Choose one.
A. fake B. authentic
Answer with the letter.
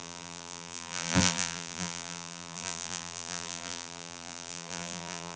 A